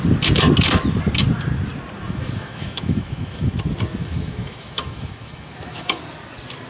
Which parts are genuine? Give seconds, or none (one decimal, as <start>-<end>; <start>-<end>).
0.0-2.0; 3.5-4.0; 6.0-6.7